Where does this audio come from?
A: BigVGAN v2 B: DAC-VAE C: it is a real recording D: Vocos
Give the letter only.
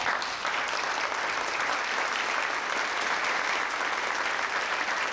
C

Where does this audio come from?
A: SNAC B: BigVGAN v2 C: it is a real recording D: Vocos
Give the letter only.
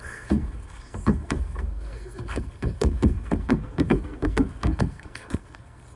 A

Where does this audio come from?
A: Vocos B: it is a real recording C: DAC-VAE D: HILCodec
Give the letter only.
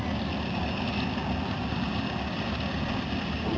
B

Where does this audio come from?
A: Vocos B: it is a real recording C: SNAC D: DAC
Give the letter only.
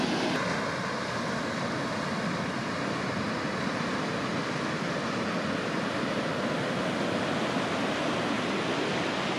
B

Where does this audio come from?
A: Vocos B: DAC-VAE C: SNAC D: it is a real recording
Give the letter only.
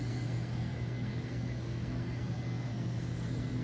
C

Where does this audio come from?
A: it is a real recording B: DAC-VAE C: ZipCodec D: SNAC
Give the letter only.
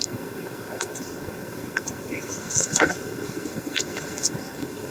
D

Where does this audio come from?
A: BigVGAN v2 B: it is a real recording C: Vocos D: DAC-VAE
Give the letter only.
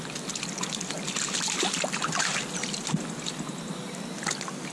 B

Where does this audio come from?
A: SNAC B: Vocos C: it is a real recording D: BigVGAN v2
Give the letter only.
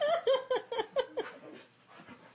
C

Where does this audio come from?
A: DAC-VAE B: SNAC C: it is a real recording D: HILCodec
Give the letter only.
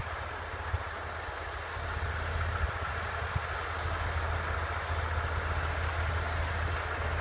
C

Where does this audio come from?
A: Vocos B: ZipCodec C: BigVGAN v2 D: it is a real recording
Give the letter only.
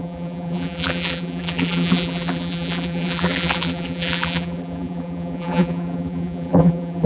C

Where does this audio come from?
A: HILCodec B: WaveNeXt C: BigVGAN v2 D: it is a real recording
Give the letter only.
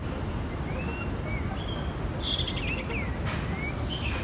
D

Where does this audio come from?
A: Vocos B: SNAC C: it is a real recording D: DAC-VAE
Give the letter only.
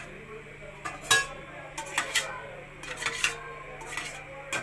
C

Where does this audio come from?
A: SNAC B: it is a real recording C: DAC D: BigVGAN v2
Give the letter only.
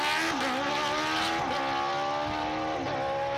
B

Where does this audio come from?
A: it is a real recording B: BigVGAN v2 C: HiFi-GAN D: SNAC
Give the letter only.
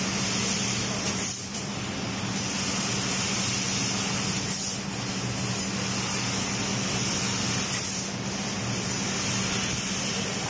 A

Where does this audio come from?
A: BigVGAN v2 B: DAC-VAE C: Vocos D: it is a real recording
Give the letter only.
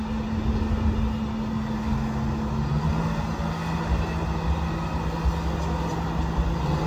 D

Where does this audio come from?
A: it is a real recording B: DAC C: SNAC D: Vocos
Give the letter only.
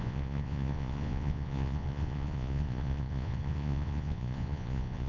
D